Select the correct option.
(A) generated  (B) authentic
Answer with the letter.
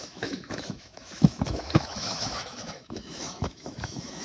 A